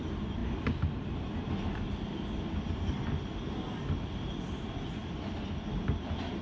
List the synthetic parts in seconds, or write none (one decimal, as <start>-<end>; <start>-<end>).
none